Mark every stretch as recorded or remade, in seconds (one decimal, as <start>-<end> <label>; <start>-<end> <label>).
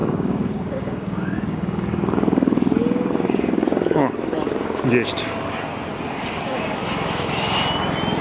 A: 0.0-4.9 remade; 4.9-6.2 recorded; 6.2-7.6 remade; 7.6-8.2 recorded